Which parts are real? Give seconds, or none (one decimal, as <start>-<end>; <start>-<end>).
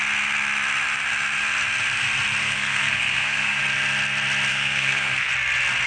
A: 0.0-2.4; 3.6-4.5; 5.3-5.9